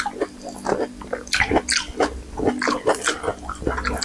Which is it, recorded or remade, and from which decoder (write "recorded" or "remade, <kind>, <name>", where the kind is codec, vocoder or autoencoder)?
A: recorded